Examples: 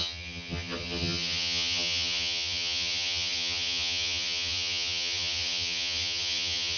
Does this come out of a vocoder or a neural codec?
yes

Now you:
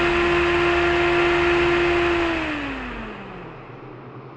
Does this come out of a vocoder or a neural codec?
no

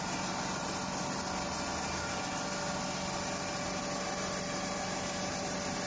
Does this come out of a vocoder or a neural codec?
no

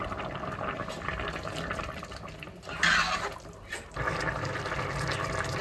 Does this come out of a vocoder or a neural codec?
no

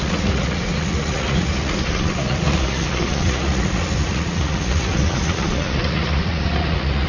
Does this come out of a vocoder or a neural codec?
yes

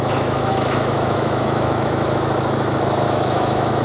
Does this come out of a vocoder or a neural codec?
yes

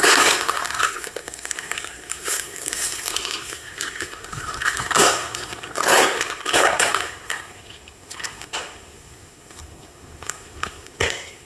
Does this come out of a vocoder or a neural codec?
yes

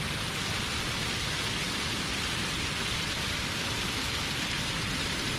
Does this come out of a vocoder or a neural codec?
no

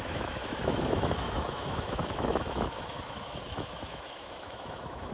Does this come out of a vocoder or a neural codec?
yes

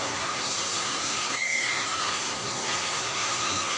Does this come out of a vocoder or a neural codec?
yes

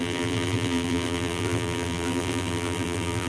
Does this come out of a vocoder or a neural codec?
yes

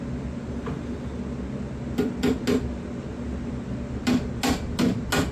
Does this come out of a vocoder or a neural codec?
no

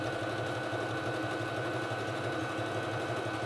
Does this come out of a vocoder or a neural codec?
no